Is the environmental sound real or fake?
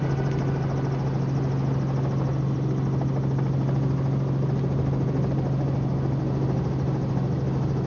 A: real